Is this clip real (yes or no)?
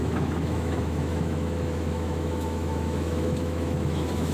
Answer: no